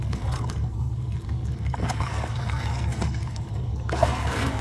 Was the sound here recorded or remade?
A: remade